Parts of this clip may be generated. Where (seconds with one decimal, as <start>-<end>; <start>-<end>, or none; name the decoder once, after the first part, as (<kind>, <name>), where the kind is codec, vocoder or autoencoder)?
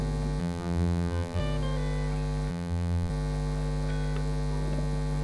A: 0.4-1.4 (vocoder, BigVGAN v2); 2.5-3.1